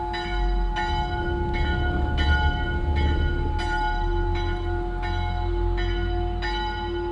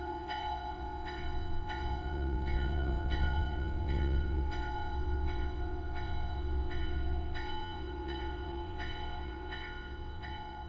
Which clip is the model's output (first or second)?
second